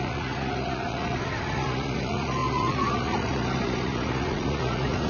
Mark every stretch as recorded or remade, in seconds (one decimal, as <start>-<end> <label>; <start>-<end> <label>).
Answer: 0.0-5.1 remade